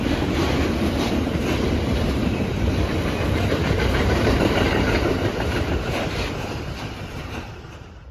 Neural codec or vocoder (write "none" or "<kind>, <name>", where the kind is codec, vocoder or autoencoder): vocoder, BigVGAN v2